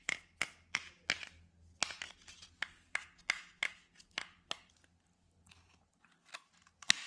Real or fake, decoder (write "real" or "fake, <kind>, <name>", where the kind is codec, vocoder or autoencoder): real